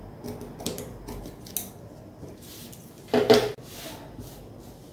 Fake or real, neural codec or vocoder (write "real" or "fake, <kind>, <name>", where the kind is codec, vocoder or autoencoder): real